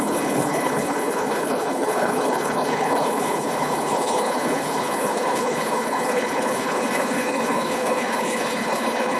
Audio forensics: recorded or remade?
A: remade